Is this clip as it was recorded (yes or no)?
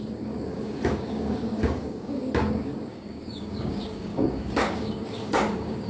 no